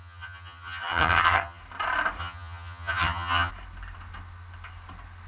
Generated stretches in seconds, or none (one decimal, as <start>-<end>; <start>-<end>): 0.0-1.6; 2.2-3.5